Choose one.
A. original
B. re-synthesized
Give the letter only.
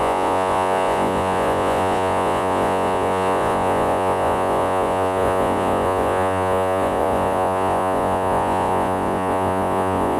B